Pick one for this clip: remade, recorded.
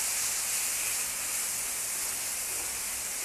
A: recorded